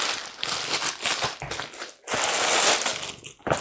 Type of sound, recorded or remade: recorded